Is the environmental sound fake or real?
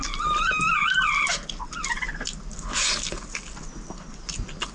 real